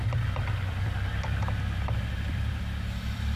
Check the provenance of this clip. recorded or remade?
remade